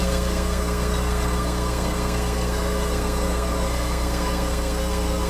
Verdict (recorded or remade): remade